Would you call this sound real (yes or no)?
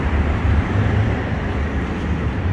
no